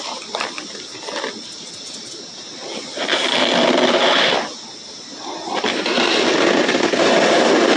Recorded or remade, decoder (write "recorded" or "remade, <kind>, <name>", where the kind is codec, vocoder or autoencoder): recorded